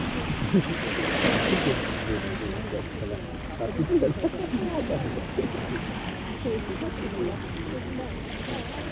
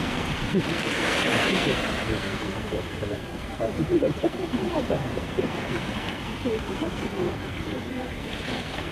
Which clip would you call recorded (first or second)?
first